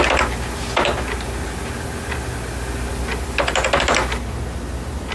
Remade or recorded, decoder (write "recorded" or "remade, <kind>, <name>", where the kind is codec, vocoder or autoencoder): recorded